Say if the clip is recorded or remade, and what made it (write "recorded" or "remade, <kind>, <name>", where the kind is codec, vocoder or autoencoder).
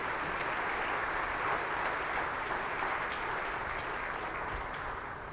recorded